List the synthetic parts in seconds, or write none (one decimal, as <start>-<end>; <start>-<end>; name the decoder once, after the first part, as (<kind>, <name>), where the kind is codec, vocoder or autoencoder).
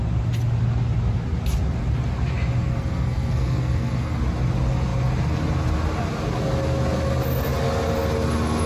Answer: 2.6-4.2 (codec, SNAC)